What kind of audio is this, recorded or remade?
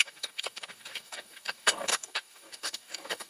remade